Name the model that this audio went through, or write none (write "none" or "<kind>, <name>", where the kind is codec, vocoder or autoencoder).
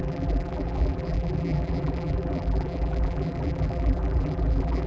vocoder, BigVGAN v2